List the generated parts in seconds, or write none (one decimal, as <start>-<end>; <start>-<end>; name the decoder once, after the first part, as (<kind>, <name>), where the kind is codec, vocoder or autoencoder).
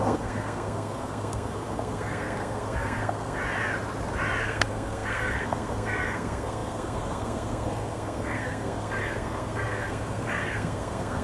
0.0-3.4 (codec, SNAC); 4.4-11.2